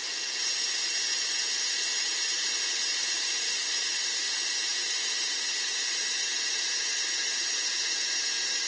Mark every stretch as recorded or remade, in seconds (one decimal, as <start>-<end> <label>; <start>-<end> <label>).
0.0-3.0 recorded; 3.0-4.3 remade; 4.3-8.7 recorded